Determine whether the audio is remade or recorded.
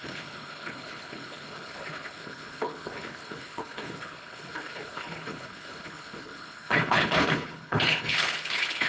remade